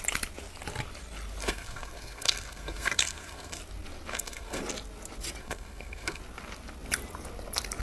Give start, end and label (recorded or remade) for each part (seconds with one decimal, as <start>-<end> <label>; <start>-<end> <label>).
0.0-1.4 recorded; 1.4-3.6 remade; 3.6-4.1 recorded; 4.1-4.6 remade; 4.6-5.4 recorded; 5.4-6.2 remade; 6.2-7.8 recorded